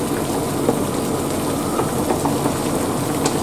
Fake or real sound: real